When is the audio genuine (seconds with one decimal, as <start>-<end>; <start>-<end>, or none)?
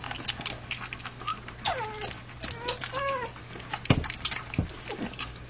0.0-5.5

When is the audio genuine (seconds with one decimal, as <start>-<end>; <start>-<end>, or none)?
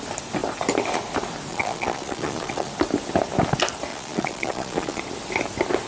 0.0-1.5; 2.7-3.9; 5.0-5.9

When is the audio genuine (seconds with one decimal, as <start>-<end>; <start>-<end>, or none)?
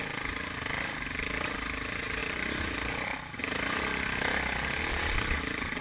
0.0-5.8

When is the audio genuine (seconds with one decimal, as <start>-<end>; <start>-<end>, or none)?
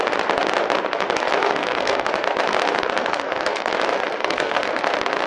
0.0-1.4; 2.1-3.0; 3.7-4.2; 4.8-5.3